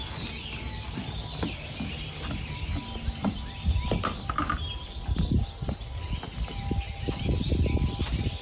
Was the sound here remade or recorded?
recorded